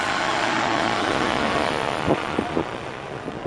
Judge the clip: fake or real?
fake